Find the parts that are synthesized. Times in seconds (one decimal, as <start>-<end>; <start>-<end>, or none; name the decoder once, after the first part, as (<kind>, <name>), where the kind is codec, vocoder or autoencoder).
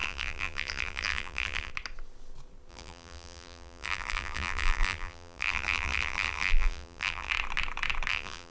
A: 0.0-1.7 (vocoder, BigVGAN v2); 2.7-7.3; 8.1-8.5